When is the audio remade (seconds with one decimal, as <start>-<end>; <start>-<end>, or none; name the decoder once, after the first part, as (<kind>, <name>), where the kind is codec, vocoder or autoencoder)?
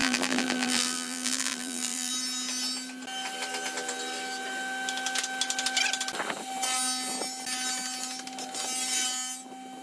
0.0-2.1 (vocoder, BigVGAN v2)